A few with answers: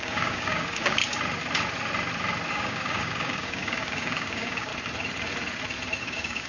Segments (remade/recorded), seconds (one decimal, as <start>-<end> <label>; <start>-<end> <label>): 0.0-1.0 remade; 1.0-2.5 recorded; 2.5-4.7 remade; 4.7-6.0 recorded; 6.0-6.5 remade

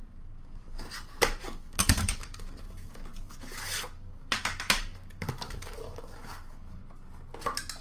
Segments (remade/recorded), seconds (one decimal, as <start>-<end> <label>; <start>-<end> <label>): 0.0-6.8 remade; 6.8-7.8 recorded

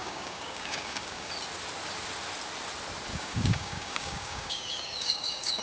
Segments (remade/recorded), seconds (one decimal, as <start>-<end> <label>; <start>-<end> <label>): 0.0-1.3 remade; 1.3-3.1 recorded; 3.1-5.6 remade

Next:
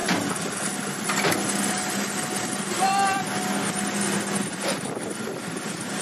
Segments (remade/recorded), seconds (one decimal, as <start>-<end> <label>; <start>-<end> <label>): 0.0-6.0 recorded

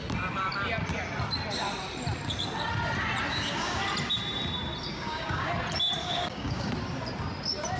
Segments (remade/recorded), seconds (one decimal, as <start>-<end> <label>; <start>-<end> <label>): 0.0-3.3 recorded; 3.3-3.8 remade; 3.8-4.9 recorded; 4.9-5.5 remade; 5.5-6.0 recorded; 6.0-6.7 remade; 6.7-7.8 recorded

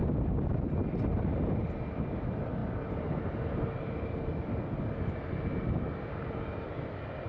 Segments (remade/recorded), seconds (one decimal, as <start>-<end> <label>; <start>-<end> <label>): 0.0-0.6 remade; 0.6-7.3 recorded